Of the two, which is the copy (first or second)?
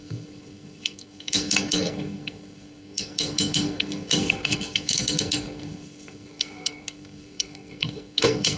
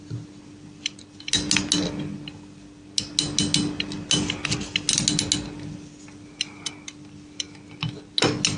first